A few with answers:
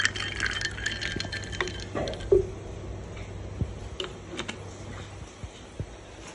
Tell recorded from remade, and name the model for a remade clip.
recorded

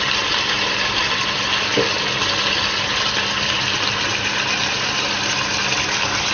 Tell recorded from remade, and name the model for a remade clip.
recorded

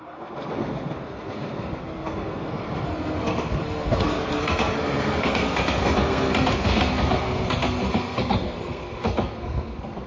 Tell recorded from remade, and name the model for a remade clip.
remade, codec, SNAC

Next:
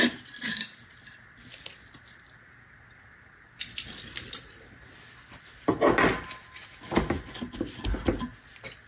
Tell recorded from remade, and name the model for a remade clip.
recorded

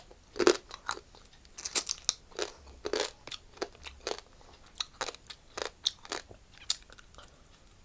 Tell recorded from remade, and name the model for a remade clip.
recorded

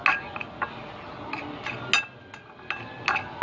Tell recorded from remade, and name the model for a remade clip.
recorded